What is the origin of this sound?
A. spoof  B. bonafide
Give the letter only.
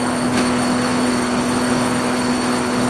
A